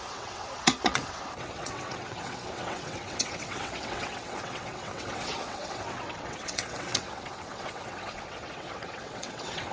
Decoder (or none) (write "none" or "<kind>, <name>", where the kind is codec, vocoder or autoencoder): vocoder, WaveNeXt